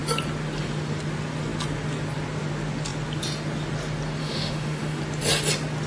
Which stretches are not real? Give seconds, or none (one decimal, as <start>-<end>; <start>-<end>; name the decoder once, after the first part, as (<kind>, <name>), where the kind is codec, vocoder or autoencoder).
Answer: 4.2-5.0 (autoencoder, DAC-VAE)